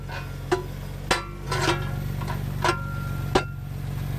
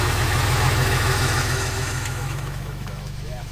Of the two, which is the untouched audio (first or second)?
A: first